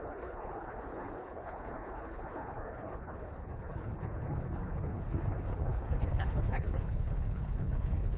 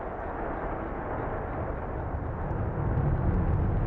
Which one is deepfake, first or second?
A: first